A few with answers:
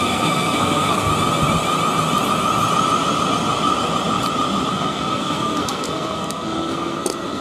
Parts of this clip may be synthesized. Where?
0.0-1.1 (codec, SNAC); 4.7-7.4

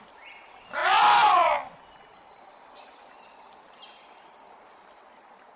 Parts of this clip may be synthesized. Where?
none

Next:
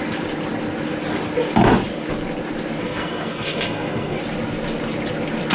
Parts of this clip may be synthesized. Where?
2.8-4.2 (codec, SNAC)